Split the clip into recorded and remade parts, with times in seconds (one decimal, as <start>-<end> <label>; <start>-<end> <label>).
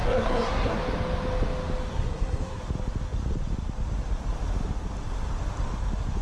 0.0-0.8 remade; 0.8-1.9 recorded; 1.9-2.6 remade; 2.6-6.2 recorded